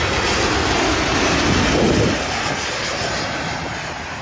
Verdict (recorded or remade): recorded